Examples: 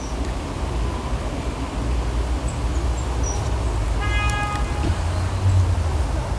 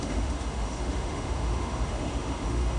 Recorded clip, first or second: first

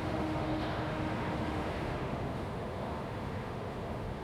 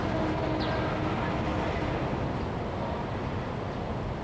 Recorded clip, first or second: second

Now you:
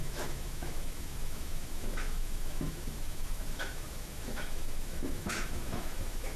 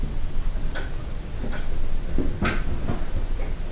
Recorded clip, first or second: second